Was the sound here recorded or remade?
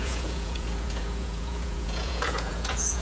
remade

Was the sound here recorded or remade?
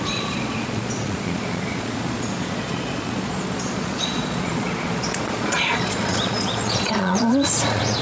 remade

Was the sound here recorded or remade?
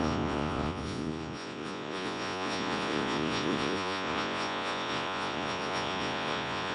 remade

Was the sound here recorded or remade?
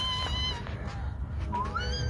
recorded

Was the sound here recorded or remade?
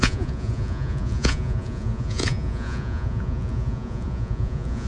remade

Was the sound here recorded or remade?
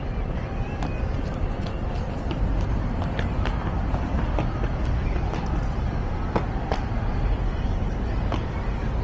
recorded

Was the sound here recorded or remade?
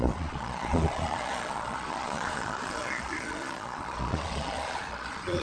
remade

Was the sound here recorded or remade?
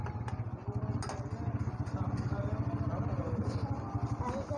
recorded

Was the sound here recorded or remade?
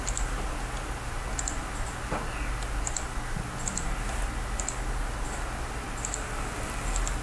recorded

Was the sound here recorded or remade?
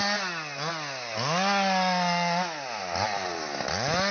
recorded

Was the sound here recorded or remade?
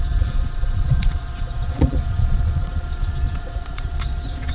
remade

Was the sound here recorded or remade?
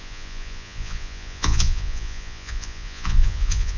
remade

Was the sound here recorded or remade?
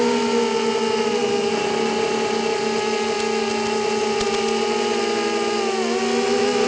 recorded